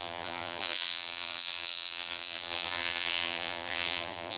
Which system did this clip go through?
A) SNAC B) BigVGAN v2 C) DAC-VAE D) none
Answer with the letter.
B